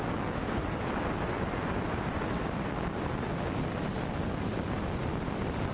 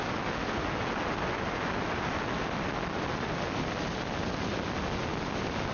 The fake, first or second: first